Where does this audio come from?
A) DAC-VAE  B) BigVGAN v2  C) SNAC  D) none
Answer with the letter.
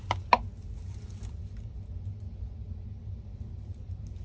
D